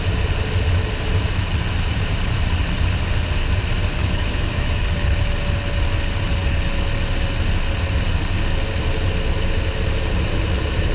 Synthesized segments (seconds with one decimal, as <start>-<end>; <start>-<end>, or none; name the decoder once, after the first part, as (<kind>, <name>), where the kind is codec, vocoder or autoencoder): 4.0-4.8 (autoencoder, DAC-VAE)